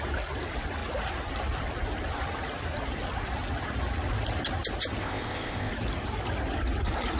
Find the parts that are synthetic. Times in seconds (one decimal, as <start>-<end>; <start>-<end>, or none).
5.0-5.7

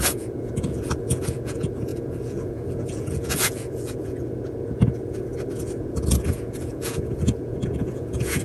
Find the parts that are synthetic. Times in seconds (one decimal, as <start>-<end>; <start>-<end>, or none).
0.0-5.3; 5.8-8.4

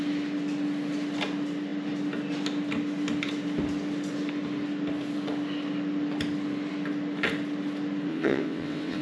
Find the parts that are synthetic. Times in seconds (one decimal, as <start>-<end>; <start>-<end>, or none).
8.1-9.0

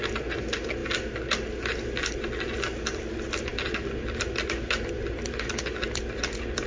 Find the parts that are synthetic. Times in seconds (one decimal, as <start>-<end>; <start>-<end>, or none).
none

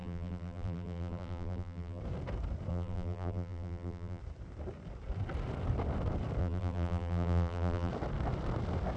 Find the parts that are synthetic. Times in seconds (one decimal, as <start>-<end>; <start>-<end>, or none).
0.0-2.0; 2.7-4.2; 6.4-7.9